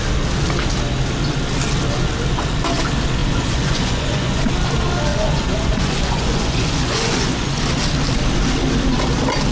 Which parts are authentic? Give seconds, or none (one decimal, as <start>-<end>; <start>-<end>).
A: 0.0-3.2; 4.5-5.1; 7.6-9.5